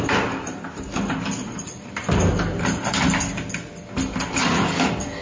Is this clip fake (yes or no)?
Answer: no